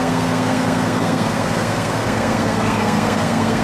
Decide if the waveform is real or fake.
fake